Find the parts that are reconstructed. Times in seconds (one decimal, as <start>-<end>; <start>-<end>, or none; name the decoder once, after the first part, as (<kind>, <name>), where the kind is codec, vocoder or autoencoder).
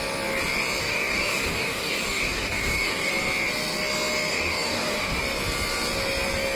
0.8-3.1 (codec, DAC); 4.3-5.2